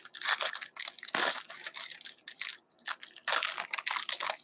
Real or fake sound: real